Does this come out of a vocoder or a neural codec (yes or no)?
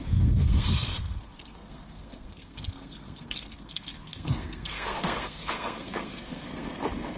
yes